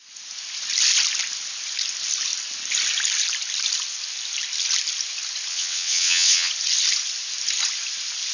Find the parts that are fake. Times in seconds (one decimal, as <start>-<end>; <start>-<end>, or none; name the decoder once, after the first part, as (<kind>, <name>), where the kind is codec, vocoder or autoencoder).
5.5-6.5 (vocoder, WaveNeXt)